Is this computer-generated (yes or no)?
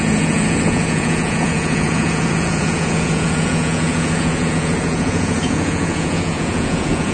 yes